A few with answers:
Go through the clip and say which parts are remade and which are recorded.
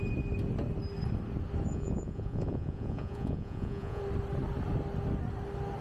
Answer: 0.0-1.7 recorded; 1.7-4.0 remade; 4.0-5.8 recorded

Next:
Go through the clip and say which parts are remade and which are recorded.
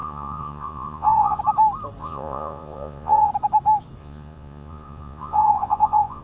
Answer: 0.0-1.4 remade; 1.4-2.0 recorded; 2.0-3.3 remade; 3.3-4.0 recorded; 4.0-6.2 remade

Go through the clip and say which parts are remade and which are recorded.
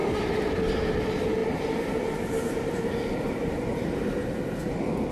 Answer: 0.0-0.6 remade; 0.6-5.1 recorded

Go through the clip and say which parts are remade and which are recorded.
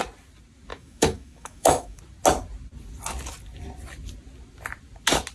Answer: 0.0-0.7 recorded; 0.7-2.0 remade; 2.0-5.3 recorded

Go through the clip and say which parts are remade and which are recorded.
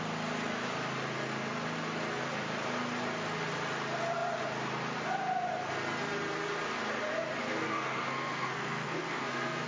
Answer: 0.0-7.4 recorded; 7.4-9.7 remade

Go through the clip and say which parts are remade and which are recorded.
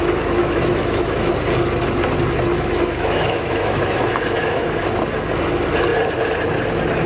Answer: 0.0-0.4 recorded; 0.4-1.3 remade; 1.3-2.5 recorded; 2.5-4.8 remade; 4.8-7.1 recorded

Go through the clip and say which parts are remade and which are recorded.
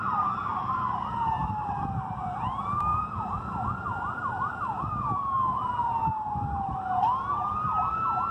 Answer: 0.0-0.5 recorded; 0.5-1.7 remade; 1.7-2.9 recorded; 2.9-3.5 remade; 3.5-8.3 recorded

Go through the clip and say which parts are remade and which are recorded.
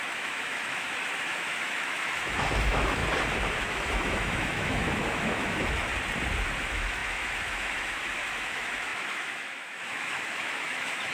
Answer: 0.0-3.0 remade; 3.0-3.6 recorded; 3.6-5.9 remade; 5.9-6.6 recorded; 6.6-11.1 remade